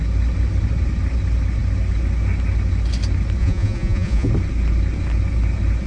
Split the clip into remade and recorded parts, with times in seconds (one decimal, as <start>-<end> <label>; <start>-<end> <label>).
0.0-3.4 recorded; 3.4-4.3 remade; 4.3-5.9 recorded